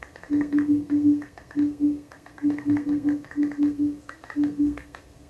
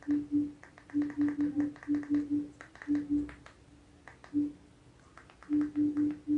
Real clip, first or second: second